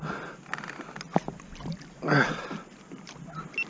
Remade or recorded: recorded